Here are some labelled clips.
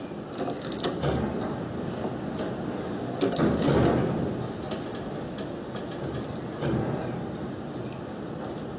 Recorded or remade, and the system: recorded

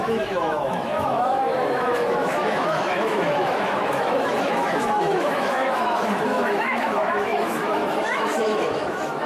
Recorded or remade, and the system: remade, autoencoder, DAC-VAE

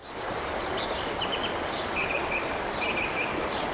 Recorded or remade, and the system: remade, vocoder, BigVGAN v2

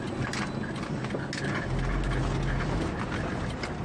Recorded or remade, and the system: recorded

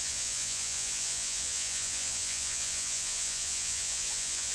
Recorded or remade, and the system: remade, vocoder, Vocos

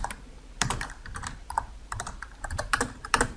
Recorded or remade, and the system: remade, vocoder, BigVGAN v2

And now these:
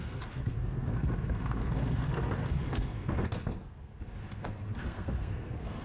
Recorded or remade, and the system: remade, codec, SNAC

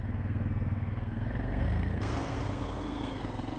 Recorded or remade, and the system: remade, codec, SNAC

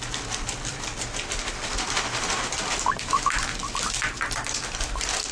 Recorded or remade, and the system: recorded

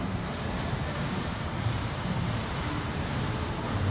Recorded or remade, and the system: remade, vocoder, BigVGAN v2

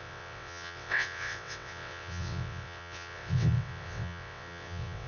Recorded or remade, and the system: remade, vocoder, WaveNeXt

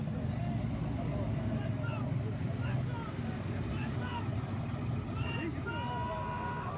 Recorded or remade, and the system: recorded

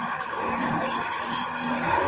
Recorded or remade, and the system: remade, codec, DAC